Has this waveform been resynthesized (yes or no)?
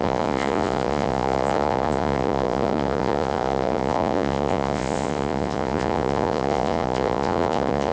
yes